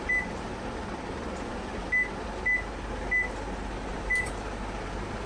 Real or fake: real